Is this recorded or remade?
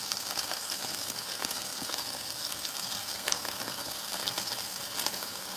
remade